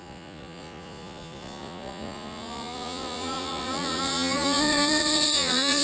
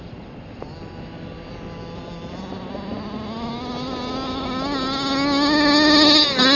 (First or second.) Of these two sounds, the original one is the second